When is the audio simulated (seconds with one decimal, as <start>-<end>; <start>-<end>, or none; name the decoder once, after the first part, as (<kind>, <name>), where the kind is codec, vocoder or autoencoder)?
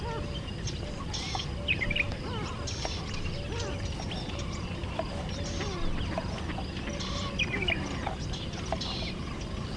none